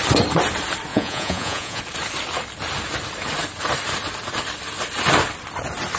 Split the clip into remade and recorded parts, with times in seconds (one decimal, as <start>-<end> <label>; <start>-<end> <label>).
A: 0.0-0.9 recorded; 0.9-1.8 remade; 1.8-6.0 recorded